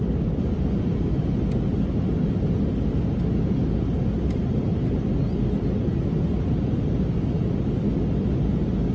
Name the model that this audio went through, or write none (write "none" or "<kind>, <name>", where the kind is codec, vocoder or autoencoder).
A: none